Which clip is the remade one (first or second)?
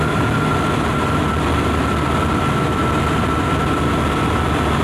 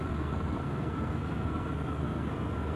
second